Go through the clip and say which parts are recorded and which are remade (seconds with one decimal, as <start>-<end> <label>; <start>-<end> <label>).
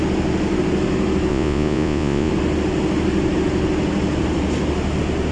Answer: 0.0-1.3 recorded; 1.3-2.3 remade; 2.3-5.3 recorded